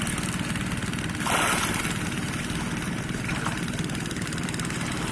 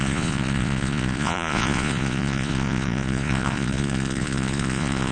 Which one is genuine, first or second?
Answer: first